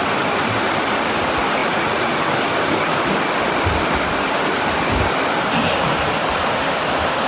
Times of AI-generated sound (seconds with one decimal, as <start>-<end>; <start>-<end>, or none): 1.6-2.2